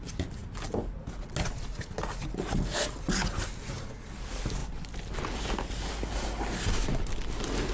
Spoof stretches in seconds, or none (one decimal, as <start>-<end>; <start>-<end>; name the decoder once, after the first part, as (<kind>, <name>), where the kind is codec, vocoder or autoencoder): none